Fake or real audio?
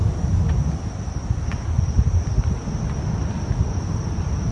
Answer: real